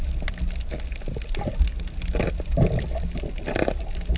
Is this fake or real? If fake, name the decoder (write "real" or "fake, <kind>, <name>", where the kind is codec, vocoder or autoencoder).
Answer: real